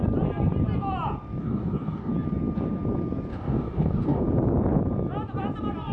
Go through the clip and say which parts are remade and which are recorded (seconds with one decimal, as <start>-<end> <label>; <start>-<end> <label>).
0.0-1.4 recorded; 1.4-2.1 remade; 2.1-3.3 recorded; 3.3-4.2 remade; 4.2-5.9 recorded